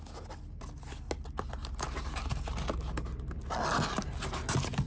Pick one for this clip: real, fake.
real